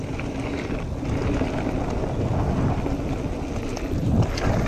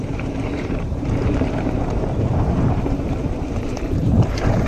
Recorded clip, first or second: first